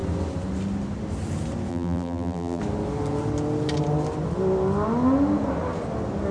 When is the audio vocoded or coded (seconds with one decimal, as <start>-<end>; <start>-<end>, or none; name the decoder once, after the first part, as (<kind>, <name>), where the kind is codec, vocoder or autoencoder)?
1.7-2.6 (vocoder, BigVGAN v2)